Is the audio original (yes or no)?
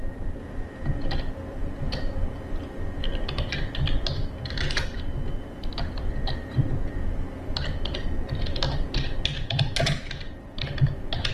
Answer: yes